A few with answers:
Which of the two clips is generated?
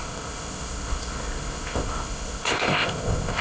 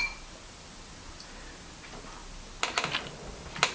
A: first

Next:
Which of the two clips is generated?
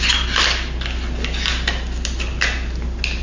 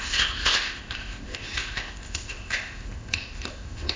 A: second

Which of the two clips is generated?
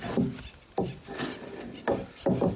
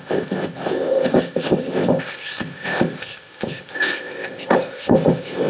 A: second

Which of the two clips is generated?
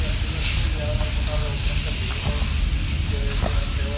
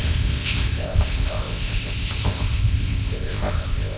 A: second